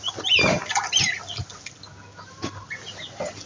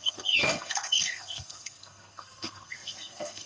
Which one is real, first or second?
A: first